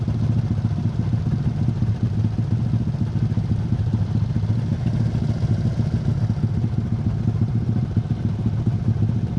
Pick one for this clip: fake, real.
real